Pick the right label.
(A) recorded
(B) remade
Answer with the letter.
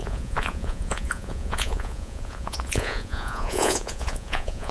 B